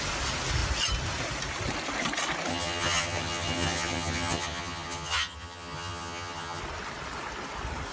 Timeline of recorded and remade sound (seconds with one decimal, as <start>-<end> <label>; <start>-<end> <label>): 0.0-2.5 recorded; 2.5-6.6 remade; 6.6-7.9 recorded